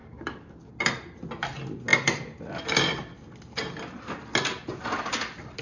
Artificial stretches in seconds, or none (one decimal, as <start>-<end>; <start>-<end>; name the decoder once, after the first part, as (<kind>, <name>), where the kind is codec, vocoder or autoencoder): 0.0-0.7 (codec, DAC)